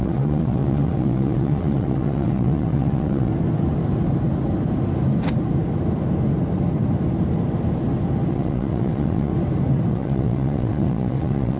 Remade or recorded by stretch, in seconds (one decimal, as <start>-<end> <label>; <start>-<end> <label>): 0.0-3.3 remade; 3.3-8.3 recorded; 8.3-9.3 remade; 9.3-9.9 recorded; 9.9-11.6 remade